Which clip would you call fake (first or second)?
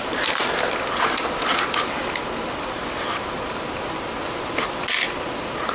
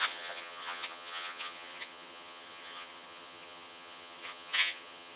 second